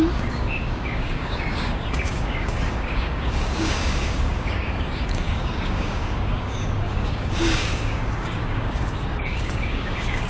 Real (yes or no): no